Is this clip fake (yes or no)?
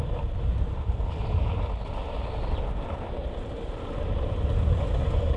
no